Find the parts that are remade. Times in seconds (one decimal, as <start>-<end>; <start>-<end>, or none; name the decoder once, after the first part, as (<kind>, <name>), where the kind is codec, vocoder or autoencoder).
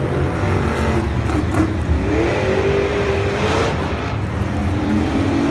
2.9-3.9 (vocoder, BigVGAN v2); 4.6-5.5